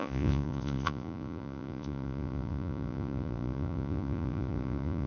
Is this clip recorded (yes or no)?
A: no